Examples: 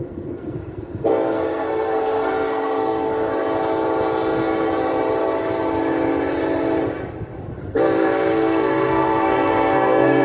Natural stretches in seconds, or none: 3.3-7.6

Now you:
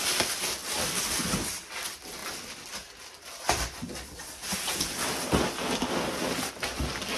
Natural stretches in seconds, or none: 0.0-7.2

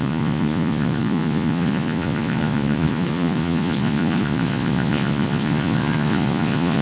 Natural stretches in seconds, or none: none

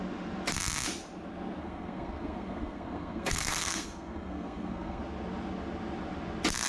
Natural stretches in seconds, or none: 0.0-1.6; 5.0-6.7